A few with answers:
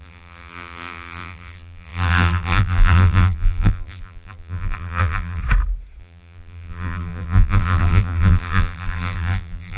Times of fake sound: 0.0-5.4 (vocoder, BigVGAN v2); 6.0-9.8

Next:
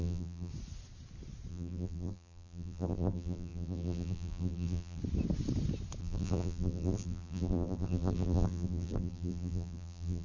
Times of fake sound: 0.0-0.5 (vocoder, BigVGAN v2); 1.5-5.0; 6.0-10.2

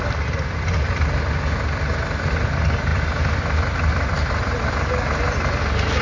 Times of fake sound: none

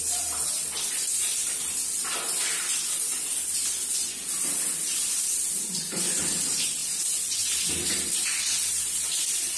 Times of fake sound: 0.0-0.7 (vocoder, BigVGAN v2); 5.9-9.6

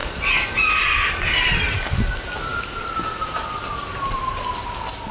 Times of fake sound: none

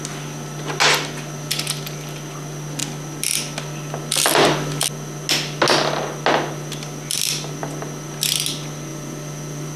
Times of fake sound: 8.9-9.8 (vocoder, BigVGAN v2)